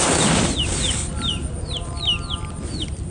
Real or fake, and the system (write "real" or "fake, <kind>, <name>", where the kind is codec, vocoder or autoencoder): real